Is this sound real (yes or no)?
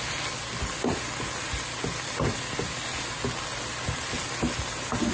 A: yes